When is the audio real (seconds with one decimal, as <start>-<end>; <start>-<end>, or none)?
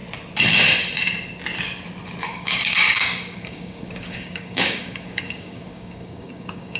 0.0-2.2